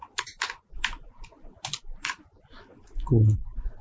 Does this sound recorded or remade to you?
recorded